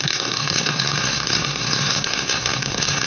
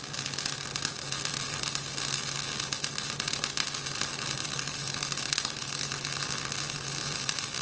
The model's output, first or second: first